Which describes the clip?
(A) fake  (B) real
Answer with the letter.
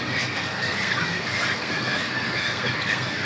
A